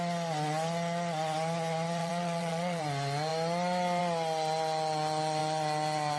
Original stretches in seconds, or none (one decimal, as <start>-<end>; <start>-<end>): 0.0-2.0; 2.8-6.2